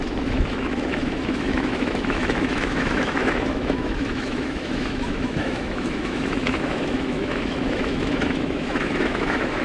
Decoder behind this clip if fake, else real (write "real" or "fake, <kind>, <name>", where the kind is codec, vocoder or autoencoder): fake, autoencoder, DAC-VAE